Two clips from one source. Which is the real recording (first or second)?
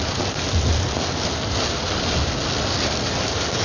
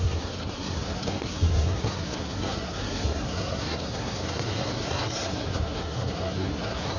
first